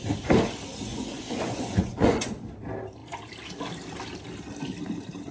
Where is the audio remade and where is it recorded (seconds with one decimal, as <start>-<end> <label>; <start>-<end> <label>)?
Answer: 0.0-0.9 recorded; 0.9-2.3 remade; 2.3-5.3 recorded